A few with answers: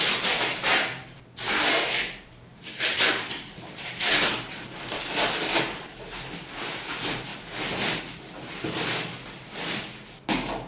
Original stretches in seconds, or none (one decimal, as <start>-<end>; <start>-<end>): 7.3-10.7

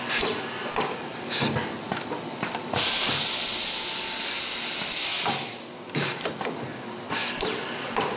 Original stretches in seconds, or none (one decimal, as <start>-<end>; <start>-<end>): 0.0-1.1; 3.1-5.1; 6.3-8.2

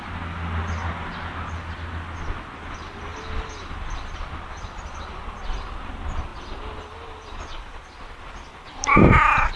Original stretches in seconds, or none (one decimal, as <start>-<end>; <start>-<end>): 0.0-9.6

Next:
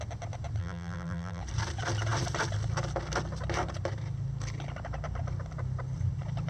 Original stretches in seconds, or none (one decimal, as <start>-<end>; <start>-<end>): 0.0-0.6; 1.4-6.5

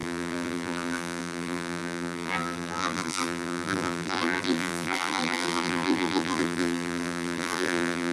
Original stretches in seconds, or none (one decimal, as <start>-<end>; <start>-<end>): none

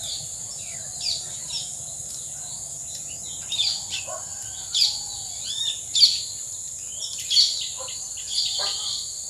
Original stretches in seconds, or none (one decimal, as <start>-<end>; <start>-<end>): 0.0-9.3